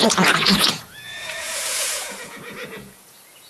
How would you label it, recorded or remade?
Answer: remade